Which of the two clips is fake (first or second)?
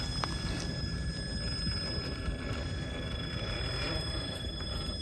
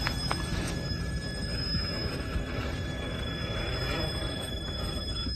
second